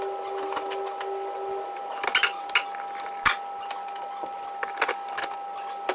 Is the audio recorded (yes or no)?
yes